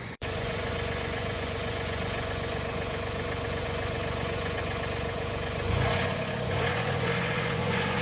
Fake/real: fake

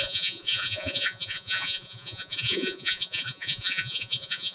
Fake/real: fake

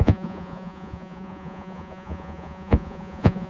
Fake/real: fake